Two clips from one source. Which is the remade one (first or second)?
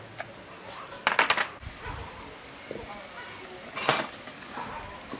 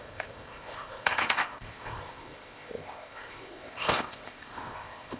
second